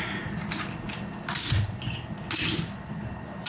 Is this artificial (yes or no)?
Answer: no